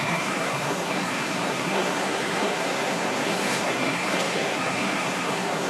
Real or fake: fake